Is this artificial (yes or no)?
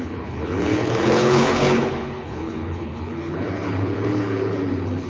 yes